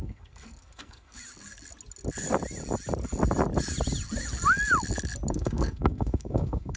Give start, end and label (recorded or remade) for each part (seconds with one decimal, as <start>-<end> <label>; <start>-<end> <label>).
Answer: 0.0-1.2 remade; 1.2-5.3 recorded; 5.3-6.8 remade